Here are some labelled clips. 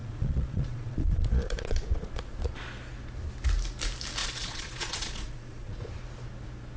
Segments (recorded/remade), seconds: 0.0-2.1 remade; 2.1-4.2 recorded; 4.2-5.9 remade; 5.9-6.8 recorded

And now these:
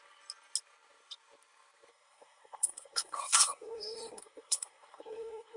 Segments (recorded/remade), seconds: 0.0-1.9 recorded; 1.9-5.6 remade

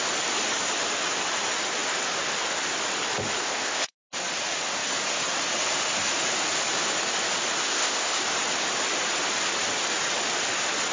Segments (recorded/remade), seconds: 0.0-3.4 recorded; 3.4-3.9 remade; 3.9-7.6 recorded; 7.6-8.2 remade; 8.2-10.9 recorded

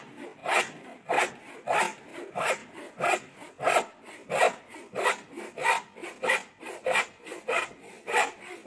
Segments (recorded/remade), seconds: 0.0-0.4 recorded; 0.4-1.3 remade; 1.3-8.7 recorded

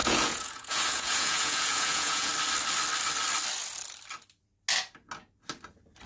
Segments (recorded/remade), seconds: 0.0-2.3 remade; 2.3-6.1 recorded

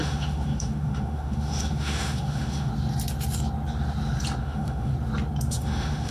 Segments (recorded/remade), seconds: 0.0-2.7 remade; 2.7-4.4 recorded; 4.4-4.9 remade; 4.9-5.5 recorded; 5.5-6.1 remade